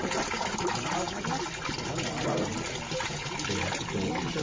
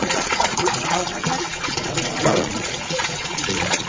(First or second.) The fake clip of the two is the second